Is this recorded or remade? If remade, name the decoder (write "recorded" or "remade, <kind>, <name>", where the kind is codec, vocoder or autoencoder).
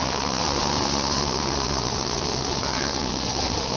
remade, vocoder, WaveNeXt